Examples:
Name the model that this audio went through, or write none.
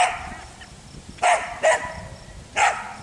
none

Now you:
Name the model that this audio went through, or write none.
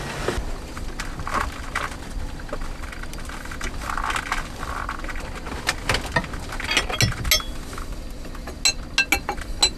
none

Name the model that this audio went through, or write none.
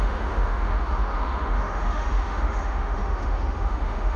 autoencoder, DAC-VAE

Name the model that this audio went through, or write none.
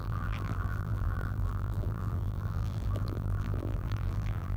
vocoder, BigVGAN v2